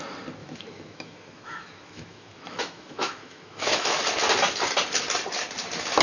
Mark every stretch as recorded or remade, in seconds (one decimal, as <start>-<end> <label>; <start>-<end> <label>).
0.0-0.4 recorded; 0.4-4.0 remade; 4.0-6.0 recorded

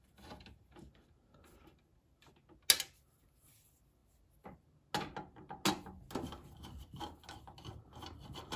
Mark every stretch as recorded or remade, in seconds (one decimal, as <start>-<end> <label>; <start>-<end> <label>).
0.0-8.6 recorded

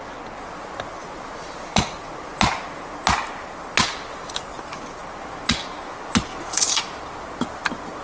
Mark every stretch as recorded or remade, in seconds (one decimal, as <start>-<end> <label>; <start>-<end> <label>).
0.0-6.3 recorded; 6.3-6.8 remade; 6.8-8.0 recorded

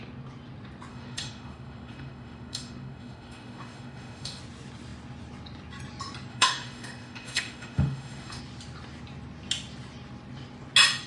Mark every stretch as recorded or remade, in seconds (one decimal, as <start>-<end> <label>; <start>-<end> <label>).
0.0-0.9 recorded; 0.9-4.4 remade; 4.4-6.3 recorded; 6.3-8.4 remade; 8.4-11.1 recorded

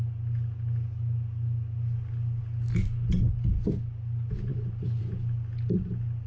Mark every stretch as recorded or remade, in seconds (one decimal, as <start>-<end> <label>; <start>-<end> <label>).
0.0-6.3 recorded

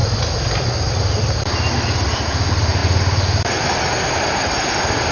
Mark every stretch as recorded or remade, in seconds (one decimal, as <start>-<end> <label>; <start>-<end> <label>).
0.0-5.1 recorded

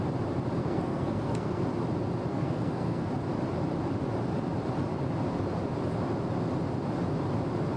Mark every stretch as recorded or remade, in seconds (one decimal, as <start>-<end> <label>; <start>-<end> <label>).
0.0-0.6 recorded; 0.6-1.6 remade; 1.6-2.3 recorded; 2.3-3.1 remade; 3.1-7.8 recorded